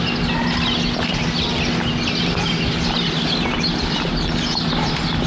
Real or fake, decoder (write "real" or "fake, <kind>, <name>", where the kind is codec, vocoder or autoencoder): real